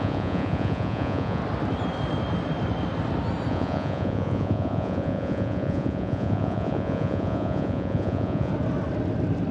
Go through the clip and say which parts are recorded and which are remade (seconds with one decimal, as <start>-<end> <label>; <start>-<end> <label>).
0.0-1.4 remade; 1.4-3.5 recorded; 3.5-8.5 remade; 8.5-9.5 recorded